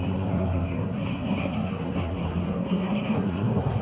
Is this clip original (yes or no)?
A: no